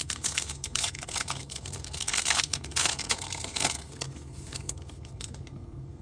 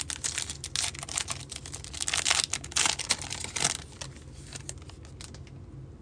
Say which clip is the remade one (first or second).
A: first